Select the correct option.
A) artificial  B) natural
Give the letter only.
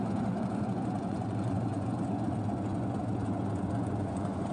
A